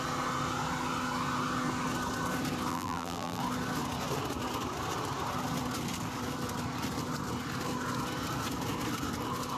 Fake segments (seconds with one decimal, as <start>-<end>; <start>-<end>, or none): 2.7-3.4